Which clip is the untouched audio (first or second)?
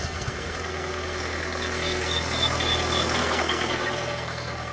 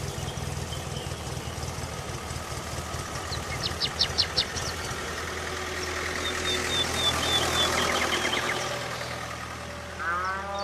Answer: second